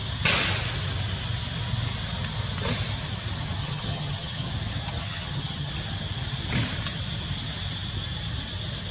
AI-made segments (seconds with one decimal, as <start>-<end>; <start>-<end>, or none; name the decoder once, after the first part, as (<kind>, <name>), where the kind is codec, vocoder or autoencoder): 3.6-4.5 (vocoder, HiFi-GAN); 5.0-5.7